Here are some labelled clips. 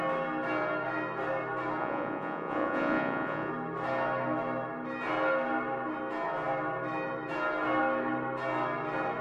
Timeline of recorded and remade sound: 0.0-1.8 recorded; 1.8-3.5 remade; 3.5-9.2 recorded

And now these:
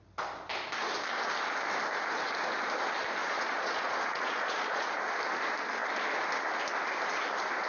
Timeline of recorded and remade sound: 0.0-3.2 recorded; 3.2-4.9 remade; 4.9-7.7 recorded

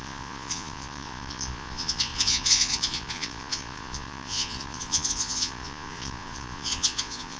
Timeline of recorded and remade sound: 0.0-7.4 remade

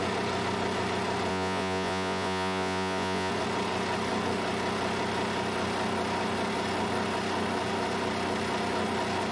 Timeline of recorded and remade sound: 0.0-1.3 recorded; 1.3-3.3 remade; 3.3-9.3 recorded

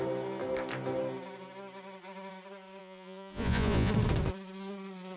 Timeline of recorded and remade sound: 0.0-2.8 recorded; 2.8-3.9 remade; 3.9-5.2 recorded

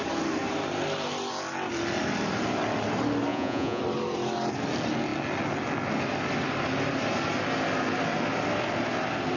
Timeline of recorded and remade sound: 0.0-3.3 recorded; 3.3-3.8 remade; 3.8-9.4 recorded

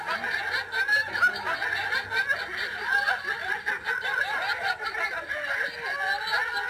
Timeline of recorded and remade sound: 0.0-6.7 recorded